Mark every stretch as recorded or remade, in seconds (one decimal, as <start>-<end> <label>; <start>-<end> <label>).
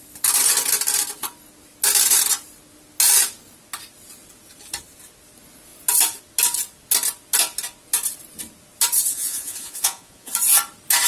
0.0-9.1 recorded; 9.1-10.3 remade; 10.3-11.1 recorded